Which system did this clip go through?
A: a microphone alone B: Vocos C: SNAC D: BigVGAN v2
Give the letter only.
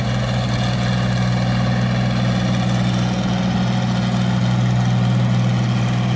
A